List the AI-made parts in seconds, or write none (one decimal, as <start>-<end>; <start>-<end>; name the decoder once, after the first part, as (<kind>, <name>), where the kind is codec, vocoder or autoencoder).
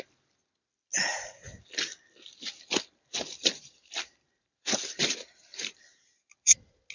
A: 1.1-1.6 (vocoder, BigVGAN v2); 3.4-6.2